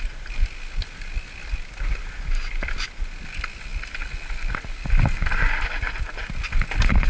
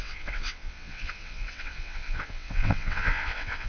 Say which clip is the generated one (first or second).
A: second